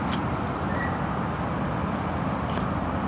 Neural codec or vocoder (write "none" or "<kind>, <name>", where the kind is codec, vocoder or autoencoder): none